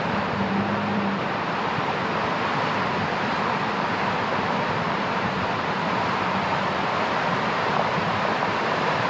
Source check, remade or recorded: remade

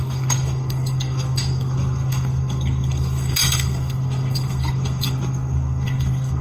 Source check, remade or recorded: remade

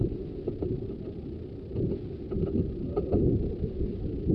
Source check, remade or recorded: recorded